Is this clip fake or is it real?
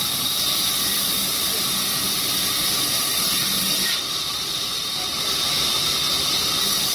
fake